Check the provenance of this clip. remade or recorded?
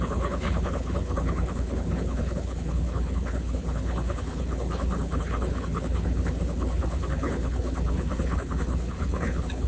remade